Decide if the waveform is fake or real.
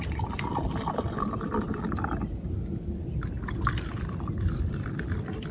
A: real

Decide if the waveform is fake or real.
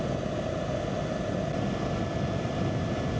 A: real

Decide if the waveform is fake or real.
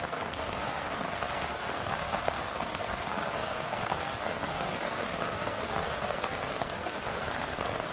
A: fake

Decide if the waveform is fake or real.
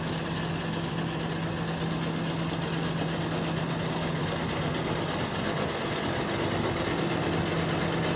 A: real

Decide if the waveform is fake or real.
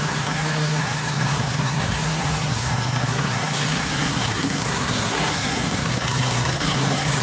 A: fake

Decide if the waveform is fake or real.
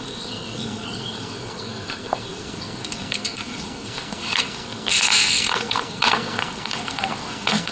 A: fake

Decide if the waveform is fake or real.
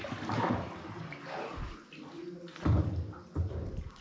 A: real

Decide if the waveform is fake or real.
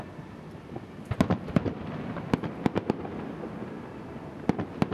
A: real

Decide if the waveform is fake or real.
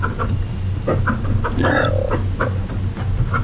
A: real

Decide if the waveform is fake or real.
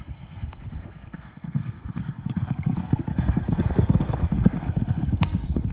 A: fake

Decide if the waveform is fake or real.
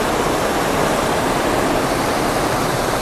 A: real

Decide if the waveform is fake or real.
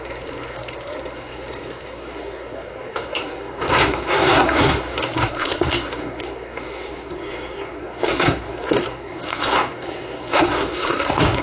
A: fake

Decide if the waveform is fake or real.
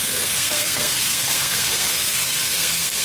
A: fake